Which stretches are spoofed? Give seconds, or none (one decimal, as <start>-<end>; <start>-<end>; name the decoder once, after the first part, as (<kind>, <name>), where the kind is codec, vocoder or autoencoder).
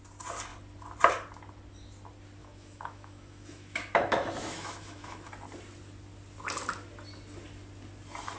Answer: 2.4-5.3 (autoencoder, DAC-VAE)